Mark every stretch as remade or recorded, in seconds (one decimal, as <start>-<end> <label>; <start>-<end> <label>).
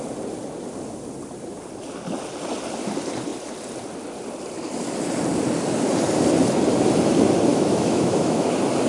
0.0-7.5 recorded; 7.5-8.5 remade; 8.5-8.9 recorded